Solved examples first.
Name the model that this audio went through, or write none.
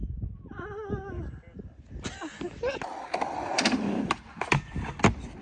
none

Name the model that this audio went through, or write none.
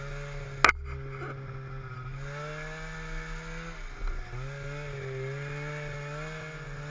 none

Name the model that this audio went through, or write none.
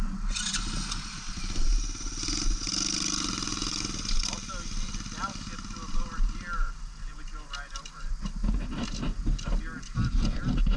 none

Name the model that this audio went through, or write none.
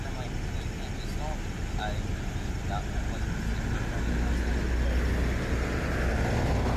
none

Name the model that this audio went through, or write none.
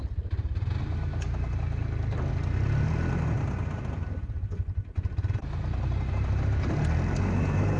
none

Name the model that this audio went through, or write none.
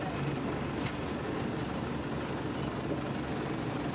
none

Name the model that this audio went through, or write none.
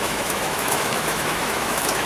autoencoder, DAC-VAE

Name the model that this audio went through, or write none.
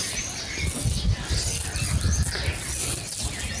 none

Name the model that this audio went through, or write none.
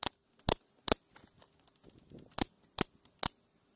none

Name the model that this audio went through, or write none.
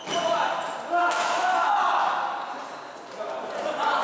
none